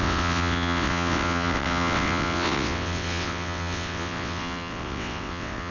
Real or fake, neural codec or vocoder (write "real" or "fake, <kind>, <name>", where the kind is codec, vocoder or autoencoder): fake, vocoder, WaveNeXt